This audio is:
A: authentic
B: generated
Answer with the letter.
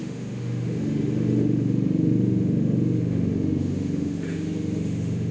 B